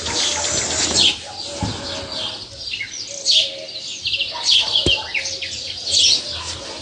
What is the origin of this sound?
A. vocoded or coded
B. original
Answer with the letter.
B